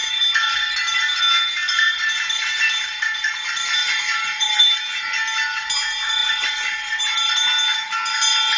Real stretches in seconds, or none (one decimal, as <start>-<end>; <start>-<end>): 0.0-1.6; 4.8-6.2; 7.0-8.6